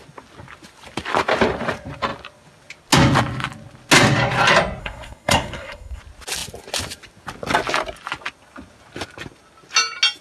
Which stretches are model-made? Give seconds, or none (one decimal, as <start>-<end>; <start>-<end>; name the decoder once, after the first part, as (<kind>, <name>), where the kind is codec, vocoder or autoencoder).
4.8-6.0 (codec, SNAC)

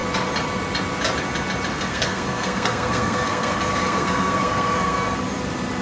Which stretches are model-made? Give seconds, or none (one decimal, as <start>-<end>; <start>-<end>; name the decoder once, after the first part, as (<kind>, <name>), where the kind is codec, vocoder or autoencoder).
1.7-5.2 (codec, SNAC)

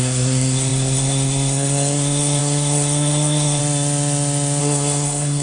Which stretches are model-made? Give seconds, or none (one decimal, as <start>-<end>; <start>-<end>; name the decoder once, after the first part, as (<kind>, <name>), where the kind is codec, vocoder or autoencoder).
0.0-3.6 (codec, SNAC); 4.6-5.4